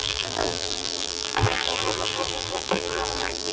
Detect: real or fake fake